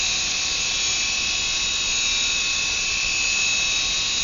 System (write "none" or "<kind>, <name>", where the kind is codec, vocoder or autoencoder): none